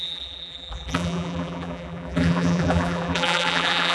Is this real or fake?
fake